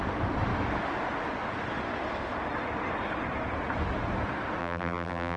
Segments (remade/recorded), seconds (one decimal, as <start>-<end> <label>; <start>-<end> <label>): 0.0-4.6 recorded; 4.6-5.4 remade